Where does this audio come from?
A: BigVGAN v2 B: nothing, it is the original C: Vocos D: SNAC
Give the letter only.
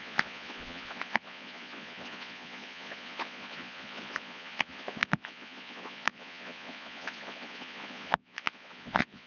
C